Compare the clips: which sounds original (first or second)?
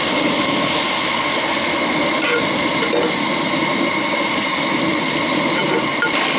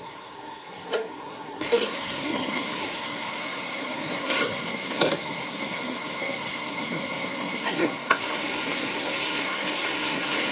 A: first